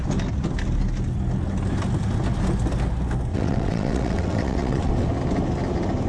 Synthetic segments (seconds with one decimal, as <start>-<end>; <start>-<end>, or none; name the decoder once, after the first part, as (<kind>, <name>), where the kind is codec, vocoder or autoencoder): 3.3-4.9 (vocoder, WaveNeXt)